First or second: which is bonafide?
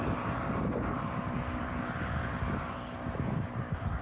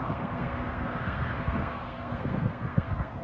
first